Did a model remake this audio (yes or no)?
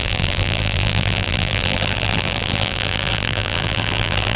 yes